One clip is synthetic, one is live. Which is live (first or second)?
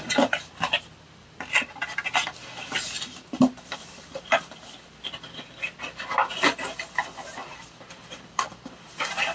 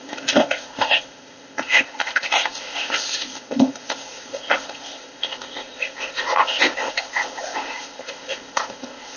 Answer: first